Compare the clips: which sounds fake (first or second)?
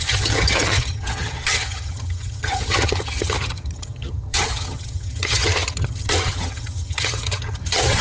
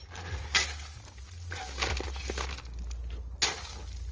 first